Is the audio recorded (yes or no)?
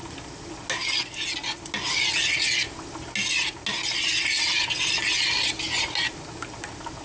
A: yes